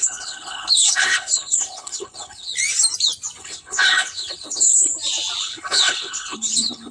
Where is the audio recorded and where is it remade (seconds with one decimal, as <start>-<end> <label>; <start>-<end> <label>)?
0.0-2.5 remade; 2.5-3.4 recorded; 3.4-4.9 remade; 4.9-5.4 recorded; 5.4-6.9 remade